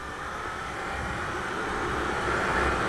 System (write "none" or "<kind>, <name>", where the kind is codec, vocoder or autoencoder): none